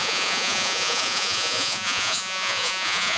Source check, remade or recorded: remade